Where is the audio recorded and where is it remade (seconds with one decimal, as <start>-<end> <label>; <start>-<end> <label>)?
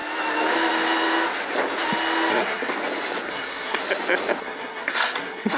0.0-2.3 recorded; 2.3-2.7 remade; 2.7-3.3 recorded; 3.3-3.8 remade; 3.8-4.4 recorded; 4.4-5.6 remade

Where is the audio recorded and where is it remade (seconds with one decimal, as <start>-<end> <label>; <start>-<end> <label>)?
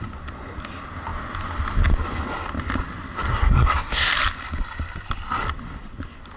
0.0-3.3 recorded; 3.3-4.1 remade; 4.1-6.4 recorded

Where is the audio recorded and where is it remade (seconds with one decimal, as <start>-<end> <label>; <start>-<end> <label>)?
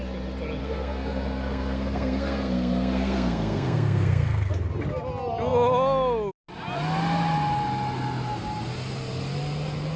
0.0-0.6 recorded; 0.6-4.5 remade; 4.5-10.0 recorded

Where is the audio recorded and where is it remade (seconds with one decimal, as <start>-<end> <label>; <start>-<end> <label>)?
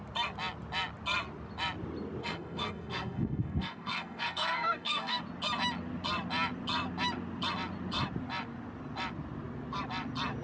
0.0-2.2 recorded; 2.2-5.2 remade; 5.2-10.4 recorded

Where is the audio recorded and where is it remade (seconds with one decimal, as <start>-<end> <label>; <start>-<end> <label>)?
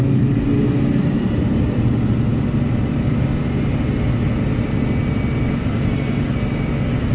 0.0-7.1 recorded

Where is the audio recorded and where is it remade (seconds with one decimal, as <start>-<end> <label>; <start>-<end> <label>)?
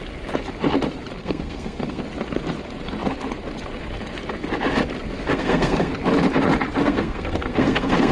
0.0-1.2 recorded; 1.2-2.0 remade; 2.0-5.3 recorded; 5.3-5.9 remade; 5.9-6.8 recorded; 6.8-8.1 remade